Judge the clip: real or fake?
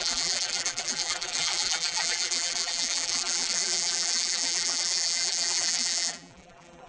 fake